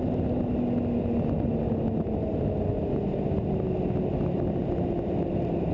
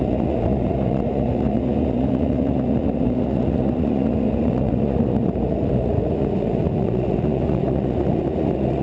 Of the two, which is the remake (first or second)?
second